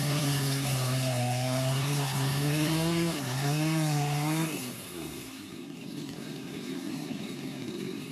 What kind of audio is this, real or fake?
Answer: fake